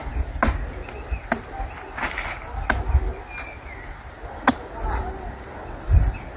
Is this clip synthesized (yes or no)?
no